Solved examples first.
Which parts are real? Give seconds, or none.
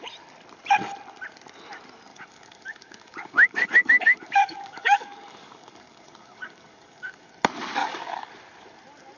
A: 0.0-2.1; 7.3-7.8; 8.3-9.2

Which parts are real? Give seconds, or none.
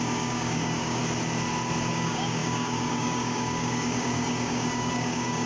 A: 1.0-1.9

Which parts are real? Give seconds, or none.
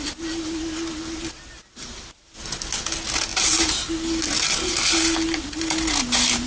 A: 0.0-6.5